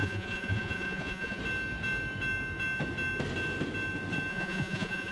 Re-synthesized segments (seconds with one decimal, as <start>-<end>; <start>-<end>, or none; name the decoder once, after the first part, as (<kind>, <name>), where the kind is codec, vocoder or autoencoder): 0.0-1.4 (vocoder, Vocos); 4.3-5.1